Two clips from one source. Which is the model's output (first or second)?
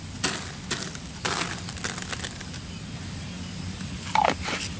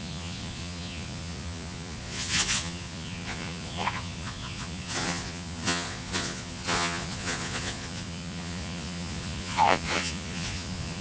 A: second